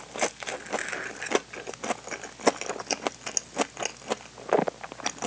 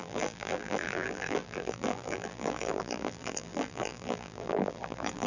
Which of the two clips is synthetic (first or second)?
second